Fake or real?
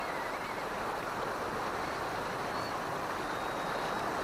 real